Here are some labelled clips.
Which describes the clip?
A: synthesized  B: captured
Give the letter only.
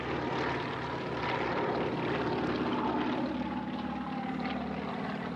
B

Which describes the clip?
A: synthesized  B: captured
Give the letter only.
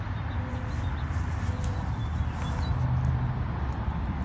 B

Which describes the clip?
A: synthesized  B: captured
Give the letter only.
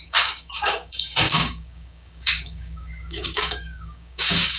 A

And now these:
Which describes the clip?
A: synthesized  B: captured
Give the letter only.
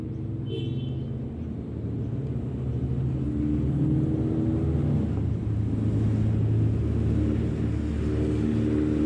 B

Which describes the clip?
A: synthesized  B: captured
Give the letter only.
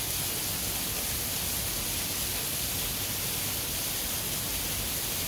B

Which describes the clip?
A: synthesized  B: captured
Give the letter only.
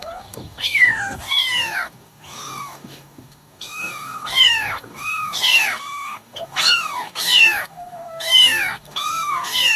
A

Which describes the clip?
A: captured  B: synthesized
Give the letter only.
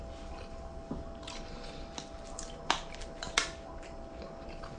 A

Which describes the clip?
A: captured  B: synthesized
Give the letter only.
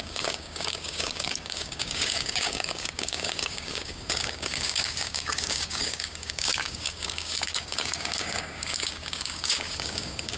B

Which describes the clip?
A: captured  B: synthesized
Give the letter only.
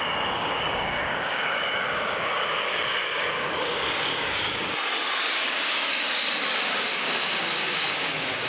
B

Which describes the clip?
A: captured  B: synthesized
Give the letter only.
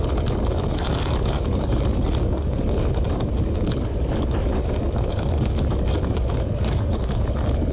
B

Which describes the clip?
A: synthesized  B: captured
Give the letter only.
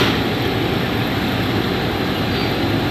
B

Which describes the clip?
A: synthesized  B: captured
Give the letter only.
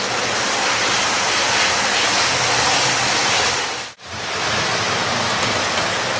B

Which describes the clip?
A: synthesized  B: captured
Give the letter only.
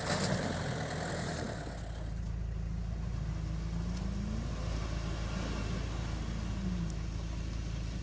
B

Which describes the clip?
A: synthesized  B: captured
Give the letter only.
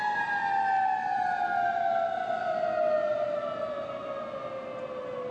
B